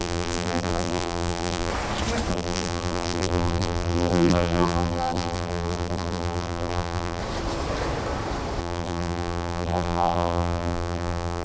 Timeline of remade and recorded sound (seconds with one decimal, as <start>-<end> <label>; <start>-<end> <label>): 0.0-1.7 remade; 1.7-2.3 recorded; 2.3-7.2 remade; 7.2-8.6 recorded; 8.6-11.4 remade